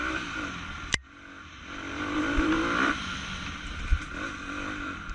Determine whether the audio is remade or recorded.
remade